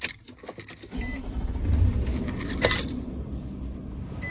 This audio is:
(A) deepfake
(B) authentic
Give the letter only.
B